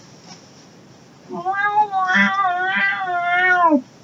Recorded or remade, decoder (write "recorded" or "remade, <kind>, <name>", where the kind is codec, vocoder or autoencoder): recorded